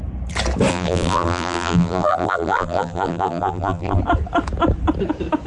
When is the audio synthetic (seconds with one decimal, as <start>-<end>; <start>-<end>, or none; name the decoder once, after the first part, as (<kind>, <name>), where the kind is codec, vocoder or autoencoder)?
0.7-4.0 (vocoder, BigVGAN v2)